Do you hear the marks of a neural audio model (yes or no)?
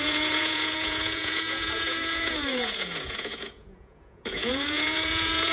yes